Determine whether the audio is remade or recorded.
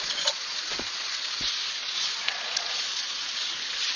remade